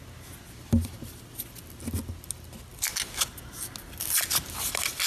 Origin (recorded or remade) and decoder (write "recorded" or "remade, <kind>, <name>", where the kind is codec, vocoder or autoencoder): recorded